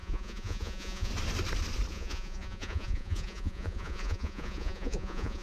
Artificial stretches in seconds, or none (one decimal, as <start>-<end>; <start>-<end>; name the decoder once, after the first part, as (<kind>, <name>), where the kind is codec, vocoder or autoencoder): 0.0-1.1 (vocoder, Vocos); 1.9-5.4